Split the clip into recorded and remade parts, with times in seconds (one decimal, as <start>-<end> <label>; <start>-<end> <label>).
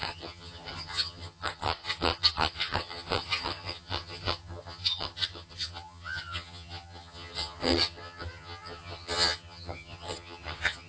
0.0-10.9 remade